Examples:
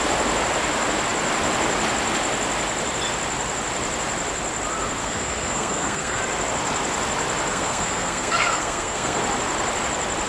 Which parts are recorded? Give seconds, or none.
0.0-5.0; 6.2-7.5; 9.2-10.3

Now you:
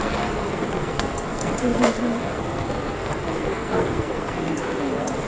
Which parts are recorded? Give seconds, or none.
none

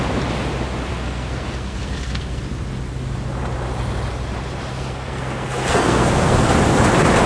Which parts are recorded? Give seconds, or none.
0.0-0.9; 2.4-4.7; 6.5-7.3

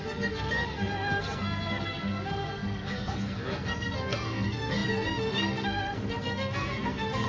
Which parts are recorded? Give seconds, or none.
none